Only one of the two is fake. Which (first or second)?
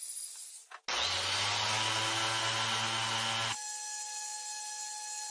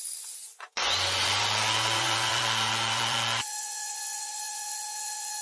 second